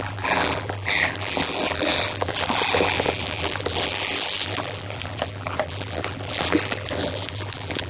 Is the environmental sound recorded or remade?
remade